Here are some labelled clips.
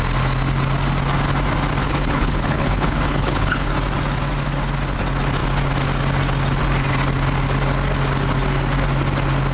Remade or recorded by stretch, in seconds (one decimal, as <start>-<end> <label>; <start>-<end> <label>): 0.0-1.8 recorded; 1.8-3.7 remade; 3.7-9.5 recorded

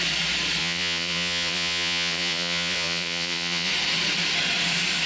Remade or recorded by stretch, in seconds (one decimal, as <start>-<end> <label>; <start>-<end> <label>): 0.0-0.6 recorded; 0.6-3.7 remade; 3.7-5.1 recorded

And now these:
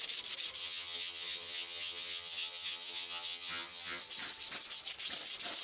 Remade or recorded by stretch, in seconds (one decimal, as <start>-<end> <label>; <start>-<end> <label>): 0.0-0.6 recorded; 0.6-4.0 remade; 4.0-5.6 recorded

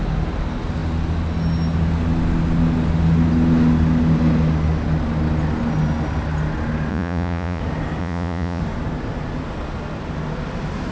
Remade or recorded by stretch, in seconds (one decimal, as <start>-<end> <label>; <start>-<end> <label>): 0.0-6.9 recorded; 6.9-7.6 remade; 7.6-8.0 recorded; 8.0-8.6 remade; 8.6-10.9 recorded